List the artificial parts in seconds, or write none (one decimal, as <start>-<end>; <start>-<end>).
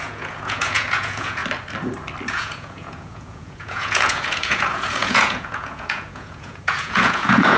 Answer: 0.0-1.4; 2.3-7.6